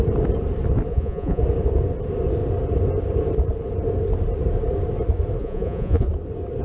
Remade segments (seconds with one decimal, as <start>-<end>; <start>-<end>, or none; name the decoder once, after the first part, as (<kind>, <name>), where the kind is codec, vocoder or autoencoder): 0.9-1.4 (vocoder, Vocos); 5.4-6.1